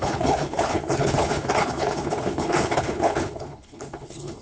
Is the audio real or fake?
fake